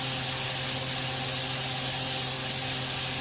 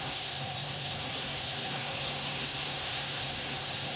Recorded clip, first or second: first